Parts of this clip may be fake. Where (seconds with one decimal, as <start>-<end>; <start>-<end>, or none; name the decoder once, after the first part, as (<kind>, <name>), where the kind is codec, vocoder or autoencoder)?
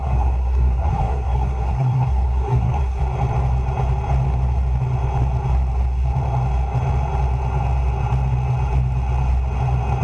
0.0-3.0 (codec, SNAC)